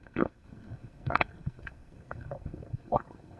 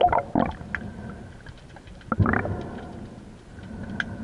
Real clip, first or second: second